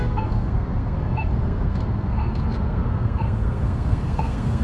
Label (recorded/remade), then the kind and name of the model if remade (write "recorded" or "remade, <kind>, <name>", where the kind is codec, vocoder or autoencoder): remade, codec, SNAC